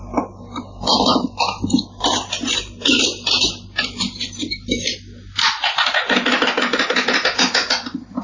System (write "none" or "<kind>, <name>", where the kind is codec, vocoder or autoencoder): none